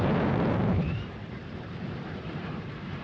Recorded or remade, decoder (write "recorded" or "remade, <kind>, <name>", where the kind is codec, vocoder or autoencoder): remade, vocoder, BigVGAN v2